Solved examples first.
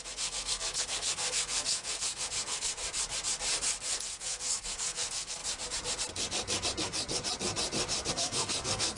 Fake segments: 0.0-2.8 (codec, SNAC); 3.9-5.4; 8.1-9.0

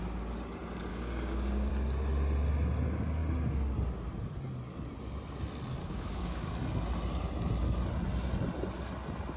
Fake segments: 0.9-1.7 (codec, DAC); 5.8-6.5

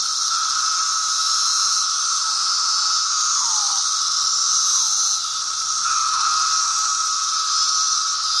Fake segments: none